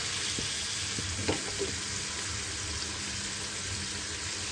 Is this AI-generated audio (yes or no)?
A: no